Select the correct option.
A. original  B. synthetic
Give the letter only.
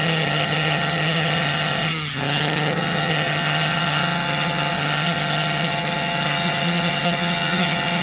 B